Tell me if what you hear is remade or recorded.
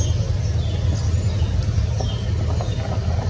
recorded